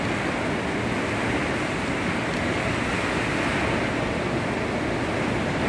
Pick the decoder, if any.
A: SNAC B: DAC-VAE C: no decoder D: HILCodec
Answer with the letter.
C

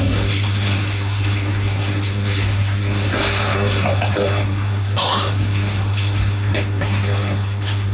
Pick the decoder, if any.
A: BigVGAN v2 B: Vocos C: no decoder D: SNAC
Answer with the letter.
D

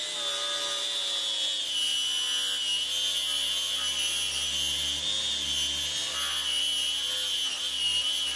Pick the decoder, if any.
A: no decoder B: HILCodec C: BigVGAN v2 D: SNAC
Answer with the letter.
A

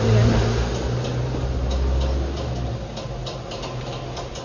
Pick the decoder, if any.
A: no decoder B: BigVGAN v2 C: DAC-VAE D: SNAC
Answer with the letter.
A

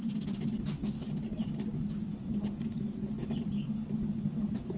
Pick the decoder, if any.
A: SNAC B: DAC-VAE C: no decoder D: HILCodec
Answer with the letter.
C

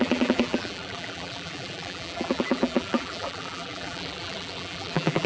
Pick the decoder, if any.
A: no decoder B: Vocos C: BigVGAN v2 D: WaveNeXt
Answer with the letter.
C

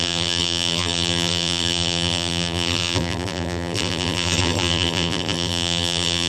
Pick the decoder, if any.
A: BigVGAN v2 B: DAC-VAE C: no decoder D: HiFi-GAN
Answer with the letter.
A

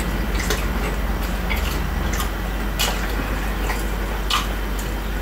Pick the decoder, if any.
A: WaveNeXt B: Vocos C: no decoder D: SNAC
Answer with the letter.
C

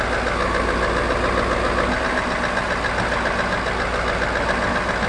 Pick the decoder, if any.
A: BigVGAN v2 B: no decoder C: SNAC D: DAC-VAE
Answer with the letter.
B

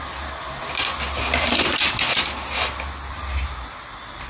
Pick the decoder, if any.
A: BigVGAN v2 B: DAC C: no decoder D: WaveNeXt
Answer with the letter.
C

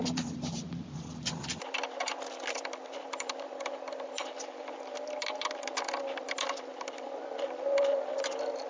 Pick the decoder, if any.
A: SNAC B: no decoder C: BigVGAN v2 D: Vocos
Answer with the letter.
C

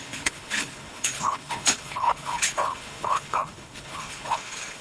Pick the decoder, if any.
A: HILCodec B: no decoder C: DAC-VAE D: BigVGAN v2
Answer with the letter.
A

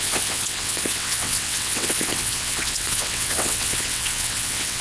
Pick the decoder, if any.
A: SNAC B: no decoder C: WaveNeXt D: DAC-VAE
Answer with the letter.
C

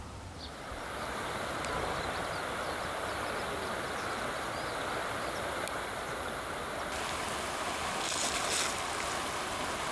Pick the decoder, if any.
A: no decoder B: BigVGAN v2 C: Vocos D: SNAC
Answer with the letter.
A